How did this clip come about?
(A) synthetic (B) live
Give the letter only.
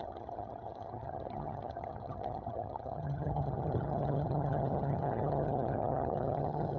A